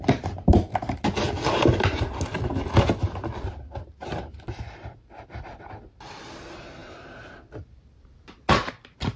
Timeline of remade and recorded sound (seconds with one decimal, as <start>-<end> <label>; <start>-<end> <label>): 0.0-9.2 recorded